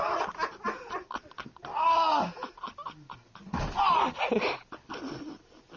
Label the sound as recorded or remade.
recorded